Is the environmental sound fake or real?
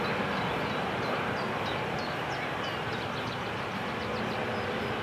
real